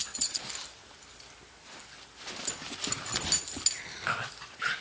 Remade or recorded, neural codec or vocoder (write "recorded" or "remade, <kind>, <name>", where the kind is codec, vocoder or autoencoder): recorded